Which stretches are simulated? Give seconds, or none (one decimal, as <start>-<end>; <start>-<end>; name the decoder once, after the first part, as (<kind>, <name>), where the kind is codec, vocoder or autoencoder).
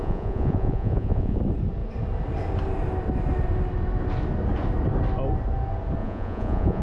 0.0-1.4 (vocoder, Vocos); 6.0-6.8